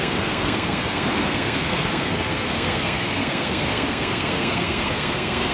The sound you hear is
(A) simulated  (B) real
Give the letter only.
A